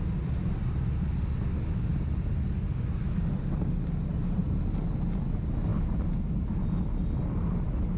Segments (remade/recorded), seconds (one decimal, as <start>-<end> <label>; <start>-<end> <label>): 0.0-8.0 recorded

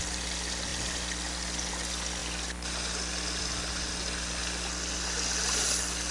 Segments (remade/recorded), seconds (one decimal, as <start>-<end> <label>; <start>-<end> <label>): 0.0-6.1 recorded

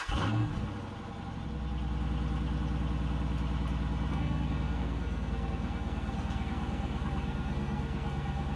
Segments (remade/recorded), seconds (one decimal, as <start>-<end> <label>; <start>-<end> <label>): 0.0-0.5 remade; 0.5-4.1 recorded; 4.1-8.6 remade

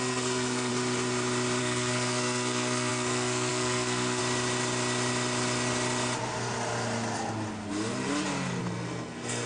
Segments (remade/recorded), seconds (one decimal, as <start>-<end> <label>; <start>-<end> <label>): 0.0-0.7 remade; 0.7-1.6 recorded; 1.6-4.2 remade; 4.2-8.6 recorded; 8.6-9.5 remade

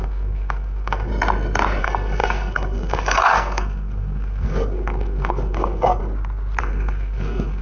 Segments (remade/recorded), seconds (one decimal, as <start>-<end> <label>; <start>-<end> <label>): 0.0-1.1 remade; 1.1-1.8 recorded; 1.8-6.0 remade; 6.0-6.6 recorded; 6.6-7.6 remade